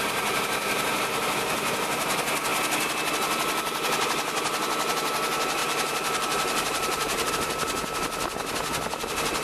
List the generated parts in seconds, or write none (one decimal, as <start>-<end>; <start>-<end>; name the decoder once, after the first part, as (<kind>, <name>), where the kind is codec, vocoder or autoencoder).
5.6-7.3 (vocoder, BigVGAN v2)